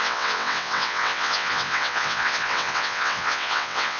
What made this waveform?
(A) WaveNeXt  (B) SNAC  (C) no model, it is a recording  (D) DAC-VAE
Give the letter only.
A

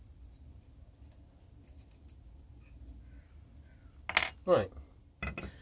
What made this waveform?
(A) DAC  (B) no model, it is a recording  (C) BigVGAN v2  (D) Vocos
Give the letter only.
B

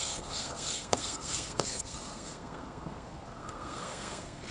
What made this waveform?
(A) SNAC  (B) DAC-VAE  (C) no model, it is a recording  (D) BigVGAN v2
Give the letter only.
A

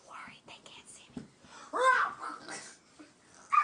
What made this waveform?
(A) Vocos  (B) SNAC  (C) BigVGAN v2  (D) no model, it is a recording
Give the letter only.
D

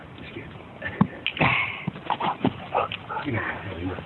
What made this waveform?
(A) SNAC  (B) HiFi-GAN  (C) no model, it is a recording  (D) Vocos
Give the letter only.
C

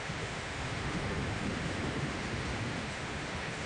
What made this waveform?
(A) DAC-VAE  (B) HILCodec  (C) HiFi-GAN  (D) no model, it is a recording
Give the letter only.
A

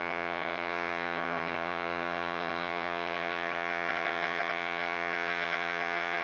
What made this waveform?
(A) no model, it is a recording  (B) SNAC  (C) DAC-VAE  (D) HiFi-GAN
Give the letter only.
D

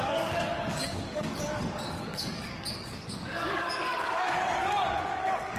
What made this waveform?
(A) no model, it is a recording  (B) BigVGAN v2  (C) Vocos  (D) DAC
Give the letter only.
D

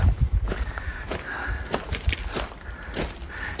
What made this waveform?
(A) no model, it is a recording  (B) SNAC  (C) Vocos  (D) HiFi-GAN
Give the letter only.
A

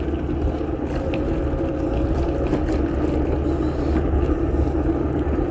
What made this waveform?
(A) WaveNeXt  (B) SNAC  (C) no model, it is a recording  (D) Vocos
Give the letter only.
C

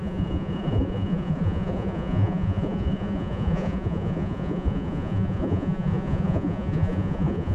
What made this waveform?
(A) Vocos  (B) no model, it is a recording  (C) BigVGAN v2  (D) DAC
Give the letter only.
A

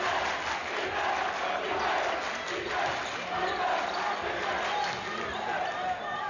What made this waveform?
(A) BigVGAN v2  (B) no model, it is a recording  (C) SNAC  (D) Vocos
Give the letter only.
B